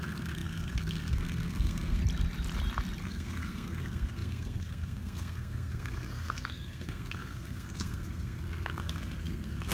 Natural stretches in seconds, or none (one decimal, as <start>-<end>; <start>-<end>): 2.0-3.0